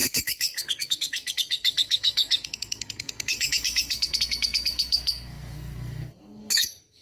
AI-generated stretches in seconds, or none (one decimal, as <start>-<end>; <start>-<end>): 0.0-7.0